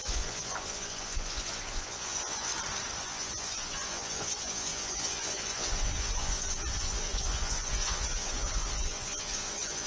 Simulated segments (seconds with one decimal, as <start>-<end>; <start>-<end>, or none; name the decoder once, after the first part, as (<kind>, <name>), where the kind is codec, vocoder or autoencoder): 0.0-2.5 (vocoder, Vocos); 3.0-9.9